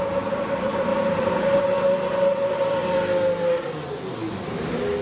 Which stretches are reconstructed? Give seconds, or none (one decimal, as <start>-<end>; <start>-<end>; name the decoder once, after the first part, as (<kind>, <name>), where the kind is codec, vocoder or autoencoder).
0.0-2.8 (vocoder, BigVGAN v2)